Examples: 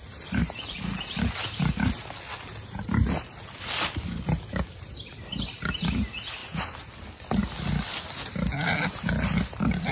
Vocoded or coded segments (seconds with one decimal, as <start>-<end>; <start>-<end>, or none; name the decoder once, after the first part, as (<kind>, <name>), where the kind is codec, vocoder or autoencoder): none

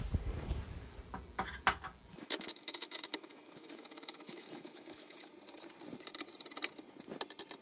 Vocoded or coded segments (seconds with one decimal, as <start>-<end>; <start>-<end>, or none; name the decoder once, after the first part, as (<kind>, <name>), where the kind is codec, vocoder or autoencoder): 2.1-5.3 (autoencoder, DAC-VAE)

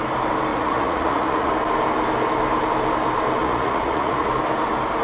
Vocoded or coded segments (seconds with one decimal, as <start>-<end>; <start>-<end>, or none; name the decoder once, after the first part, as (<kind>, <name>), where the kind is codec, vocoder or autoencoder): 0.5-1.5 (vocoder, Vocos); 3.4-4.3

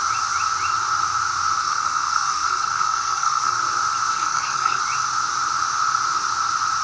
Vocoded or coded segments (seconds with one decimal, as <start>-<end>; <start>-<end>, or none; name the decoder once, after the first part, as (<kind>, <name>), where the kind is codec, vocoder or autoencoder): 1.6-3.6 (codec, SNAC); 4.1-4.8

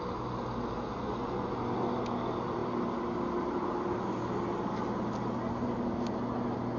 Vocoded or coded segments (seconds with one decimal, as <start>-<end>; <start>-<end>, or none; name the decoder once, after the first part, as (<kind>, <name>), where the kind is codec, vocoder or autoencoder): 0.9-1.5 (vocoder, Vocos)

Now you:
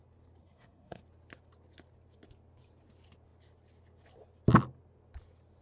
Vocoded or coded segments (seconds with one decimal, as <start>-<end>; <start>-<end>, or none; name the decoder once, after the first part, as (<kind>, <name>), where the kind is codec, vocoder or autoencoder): 0.4-1.0 (codec, SNAC)

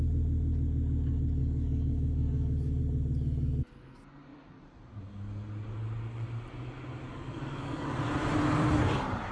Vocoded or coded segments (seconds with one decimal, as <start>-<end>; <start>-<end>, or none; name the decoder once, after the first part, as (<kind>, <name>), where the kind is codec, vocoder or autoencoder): 1.4-2.8 (codec, DAC); 7.1-8.0